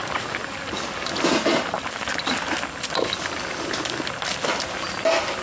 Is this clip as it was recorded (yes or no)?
yes